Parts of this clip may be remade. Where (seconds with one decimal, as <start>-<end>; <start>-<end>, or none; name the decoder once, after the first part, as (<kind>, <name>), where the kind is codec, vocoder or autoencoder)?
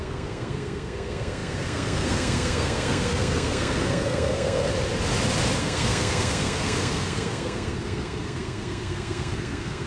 0.0-4.7 (codec, SNAC); 5.6-9.9